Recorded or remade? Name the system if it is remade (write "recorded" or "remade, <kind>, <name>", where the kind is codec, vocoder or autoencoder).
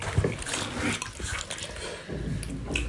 recorded